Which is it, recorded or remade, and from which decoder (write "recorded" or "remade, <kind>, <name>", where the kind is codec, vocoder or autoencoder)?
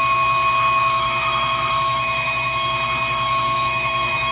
remade, autoencoder, DAC-VAE